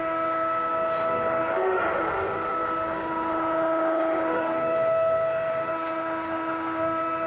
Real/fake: fake